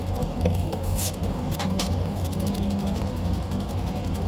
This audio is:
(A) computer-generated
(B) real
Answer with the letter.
A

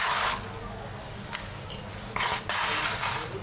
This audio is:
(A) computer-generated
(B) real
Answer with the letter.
B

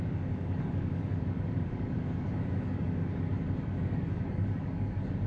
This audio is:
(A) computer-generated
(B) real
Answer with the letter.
A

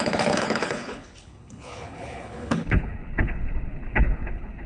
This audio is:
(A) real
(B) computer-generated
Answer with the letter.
B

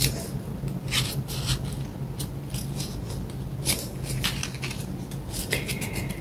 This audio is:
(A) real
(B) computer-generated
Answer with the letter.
A